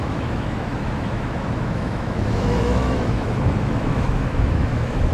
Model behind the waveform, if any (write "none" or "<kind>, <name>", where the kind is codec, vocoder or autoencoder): autoencoder, DAC-VAE